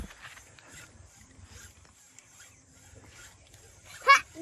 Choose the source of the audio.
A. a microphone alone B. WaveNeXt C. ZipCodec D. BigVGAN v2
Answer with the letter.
A